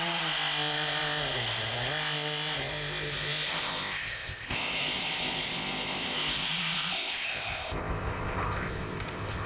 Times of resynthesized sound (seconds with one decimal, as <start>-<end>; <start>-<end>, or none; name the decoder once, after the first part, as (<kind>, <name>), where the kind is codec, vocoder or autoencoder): 0.0-9.5 (codec, ZipCodec)